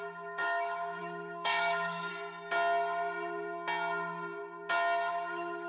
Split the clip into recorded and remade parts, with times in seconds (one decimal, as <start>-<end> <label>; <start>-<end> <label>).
0.0-2.1 remade; 2.1-5.1 recorded; 5.1-5.7 remade